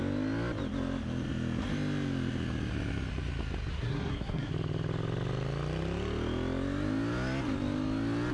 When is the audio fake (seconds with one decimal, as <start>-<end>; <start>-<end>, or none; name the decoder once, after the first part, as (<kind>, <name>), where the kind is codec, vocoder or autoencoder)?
3.7-4.5 (codec, SNAC)